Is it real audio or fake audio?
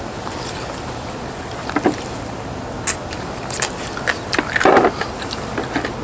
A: real